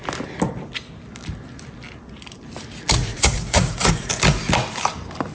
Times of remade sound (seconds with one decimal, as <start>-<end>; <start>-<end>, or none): 3.1-4.1